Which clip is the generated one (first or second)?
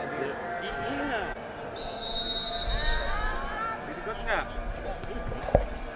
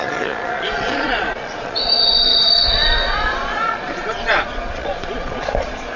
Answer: second